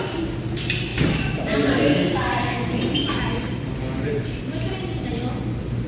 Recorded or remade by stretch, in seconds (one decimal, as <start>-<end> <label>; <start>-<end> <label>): 0.0-0.9 recorded; 0.9-4.4 remade; 4.4-5.9 recorded